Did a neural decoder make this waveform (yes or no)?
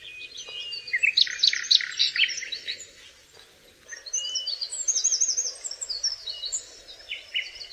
no